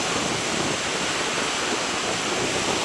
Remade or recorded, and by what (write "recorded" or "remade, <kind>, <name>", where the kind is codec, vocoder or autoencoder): recorded